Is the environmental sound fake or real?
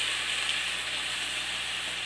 real